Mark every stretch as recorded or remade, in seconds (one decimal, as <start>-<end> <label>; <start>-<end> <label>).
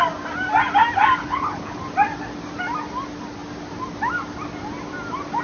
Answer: 0.0-1.2 recorded; 1.2-1.8 remade; 1.8-5.4 recorded